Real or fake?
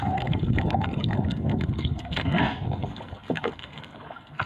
fake